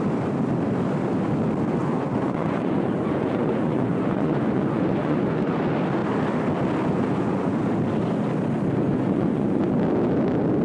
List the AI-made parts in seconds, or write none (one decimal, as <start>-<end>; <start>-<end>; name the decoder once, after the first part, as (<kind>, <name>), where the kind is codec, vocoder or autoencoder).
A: 1.8-5.6 (vocoder, Vocos); 6.9-7.6; 8.9-9.6